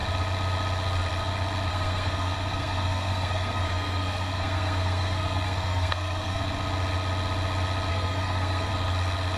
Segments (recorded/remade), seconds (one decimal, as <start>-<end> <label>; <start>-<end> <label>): 0.0-1.7 recorded; 1.7-6.4 remade; 6.4-7.9 recorded; 7.9-8.7 remade; 8.7-9.4 recorded